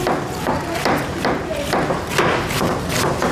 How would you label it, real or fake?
real